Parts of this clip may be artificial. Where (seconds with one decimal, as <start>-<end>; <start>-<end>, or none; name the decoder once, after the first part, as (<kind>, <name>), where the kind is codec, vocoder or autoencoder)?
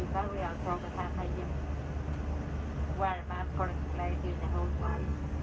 4.7-5.4 (codec, SNAC)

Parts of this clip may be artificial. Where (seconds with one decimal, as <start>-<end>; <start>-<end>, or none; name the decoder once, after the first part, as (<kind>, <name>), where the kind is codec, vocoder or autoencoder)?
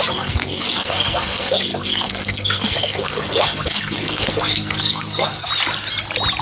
0.0-5.5 (codec, SNAC)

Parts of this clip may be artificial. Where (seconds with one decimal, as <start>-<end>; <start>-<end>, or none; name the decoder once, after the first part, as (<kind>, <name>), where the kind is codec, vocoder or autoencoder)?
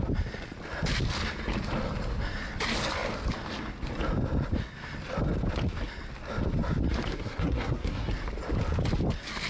7.1-8.1 (codec, SNAC)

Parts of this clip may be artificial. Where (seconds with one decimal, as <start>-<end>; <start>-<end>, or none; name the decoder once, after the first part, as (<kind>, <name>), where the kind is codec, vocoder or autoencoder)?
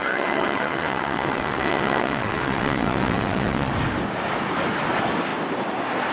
0.0-3.7 (vocoder, WaveNeXt)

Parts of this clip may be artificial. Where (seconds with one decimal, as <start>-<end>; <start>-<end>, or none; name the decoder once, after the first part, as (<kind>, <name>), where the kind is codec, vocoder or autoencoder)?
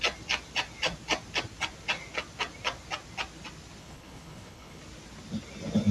3.8-4.8 (codec, HILCodec)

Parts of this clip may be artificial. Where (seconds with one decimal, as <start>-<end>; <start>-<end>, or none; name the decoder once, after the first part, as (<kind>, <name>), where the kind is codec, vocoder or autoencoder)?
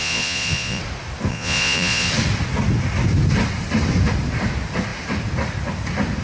0.0-0.8 (vocoder, Vocos); 1.3-2.1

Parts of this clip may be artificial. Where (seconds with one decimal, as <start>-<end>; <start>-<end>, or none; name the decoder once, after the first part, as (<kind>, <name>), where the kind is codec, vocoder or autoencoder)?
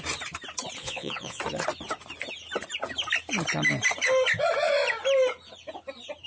0.8-1.4 (vocoder, Vocos)